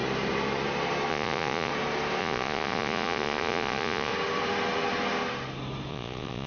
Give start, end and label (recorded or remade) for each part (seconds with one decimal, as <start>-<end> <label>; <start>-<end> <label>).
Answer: 0.0-1.1 recorded; 1.1-1.7 remade; 1.7-2.2 recorded; 2.2-4.1 remade; 4.1-5.9 recorded; 5.9-6.5 remade